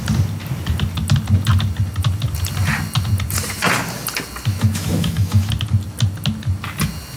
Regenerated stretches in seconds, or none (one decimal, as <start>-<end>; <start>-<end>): 4.5-5.5